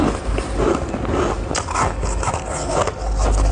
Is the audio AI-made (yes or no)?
no